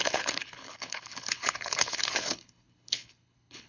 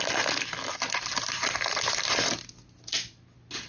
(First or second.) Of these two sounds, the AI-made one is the first